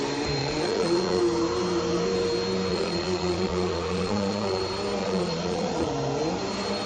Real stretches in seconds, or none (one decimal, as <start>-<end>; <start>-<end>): 0.0-0.4; 1.2-2.7; 4.6-5.0; 5.9-6.9